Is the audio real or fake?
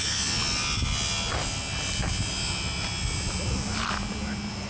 real